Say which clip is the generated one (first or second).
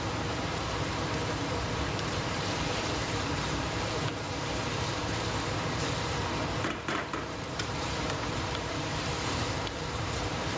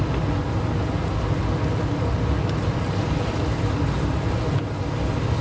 first